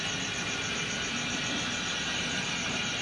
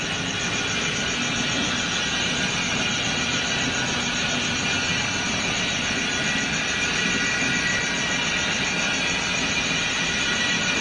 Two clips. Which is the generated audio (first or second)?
first